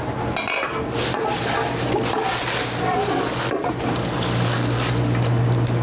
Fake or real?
real